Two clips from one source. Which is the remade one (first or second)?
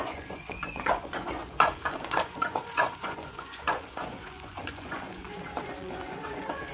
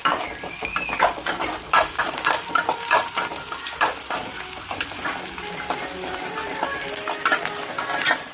first